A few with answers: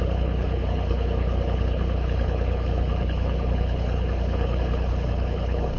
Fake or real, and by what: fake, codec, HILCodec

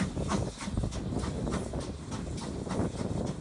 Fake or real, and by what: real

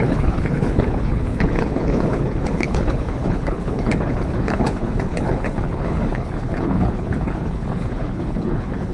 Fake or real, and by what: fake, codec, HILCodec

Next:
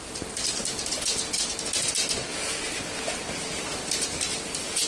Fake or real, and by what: real